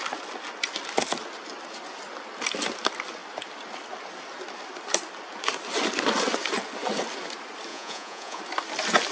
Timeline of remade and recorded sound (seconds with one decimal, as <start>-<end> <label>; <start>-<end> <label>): 0.0-7.7 recorded; 7.7-8.4 remade; 8.4-9.1 recorded